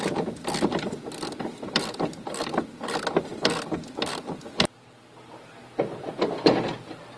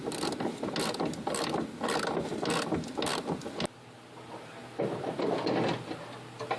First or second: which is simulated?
first